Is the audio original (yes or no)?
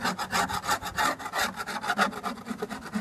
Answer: yes